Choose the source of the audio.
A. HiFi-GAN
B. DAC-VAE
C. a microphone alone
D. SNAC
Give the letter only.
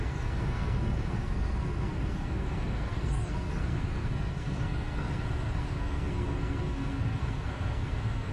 D